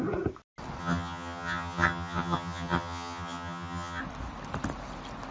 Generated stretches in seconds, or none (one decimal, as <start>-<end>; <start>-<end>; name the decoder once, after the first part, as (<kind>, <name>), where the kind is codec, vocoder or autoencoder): 0.8-4.0 (vocoder, HiFi-GAN)